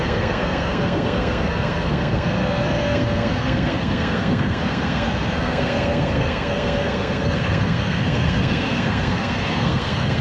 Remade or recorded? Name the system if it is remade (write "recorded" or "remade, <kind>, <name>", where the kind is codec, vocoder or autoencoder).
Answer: remade, codec, SNAC